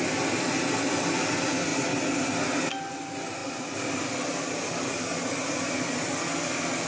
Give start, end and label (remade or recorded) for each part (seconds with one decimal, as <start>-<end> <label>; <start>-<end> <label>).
0.0-1.7 remade; 1.7-2.9 recorded; 2.9-6.9 remade